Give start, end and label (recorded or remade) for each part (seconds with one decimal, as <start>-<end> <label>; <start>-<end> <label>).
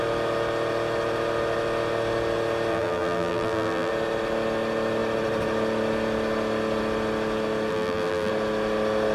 0.0-2.7 recorded; 2.7-3.9 remade; 3.9-7.7 recorded; 7.7-8.3 remade; 8.3-9.1 recorded